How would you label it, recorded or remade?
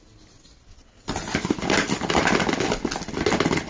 recorded